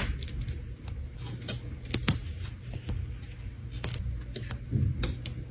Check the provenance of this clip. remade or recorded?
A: recorded